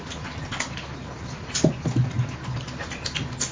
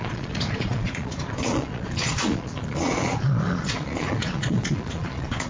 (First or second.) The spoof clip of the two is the second